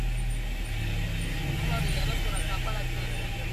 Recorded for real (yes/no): yes